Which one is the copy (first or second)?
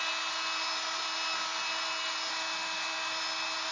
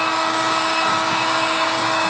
second